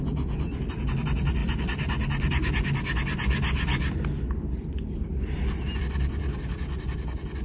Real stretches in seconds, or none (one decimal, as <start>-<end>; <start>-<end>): 0.0-7.4